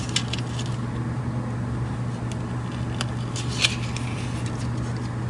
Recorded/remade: recorded